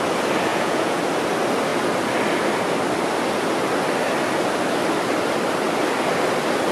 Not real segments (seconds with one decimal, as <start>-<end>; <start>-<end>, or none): 0.5-1.0